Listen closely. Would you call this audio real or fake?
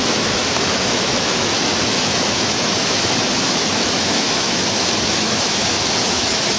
fake